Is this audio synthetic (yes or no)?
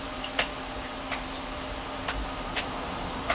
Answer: yes